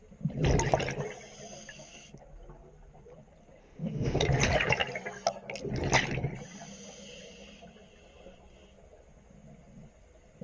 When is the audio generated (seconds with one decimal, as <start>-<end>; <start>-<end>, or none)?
3.6-4.2